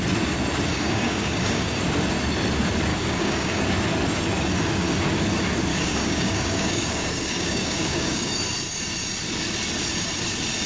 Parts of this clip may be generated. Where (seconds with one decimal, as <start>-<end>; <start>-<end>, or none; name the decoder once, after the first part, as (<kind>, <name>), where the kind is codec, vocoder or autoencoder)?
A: 0.7-1.8 (codec, DAC); 2.9-3.6; 5.7-8.3